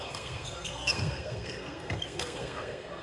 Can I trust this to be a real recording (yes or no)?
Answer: no